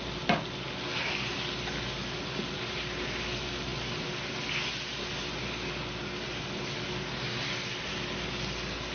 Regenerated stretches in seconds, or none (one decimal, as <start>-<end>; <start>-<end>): none